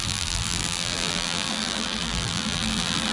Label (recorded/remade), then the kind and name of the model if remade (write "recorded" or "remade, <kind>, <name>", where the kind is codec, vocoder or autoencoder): remade, vocoder, BigVGAN v2